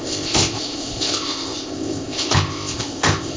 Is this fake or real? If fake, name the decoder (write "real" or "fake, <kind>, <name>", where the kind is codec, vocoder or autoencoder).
fake, codec, ZipCodec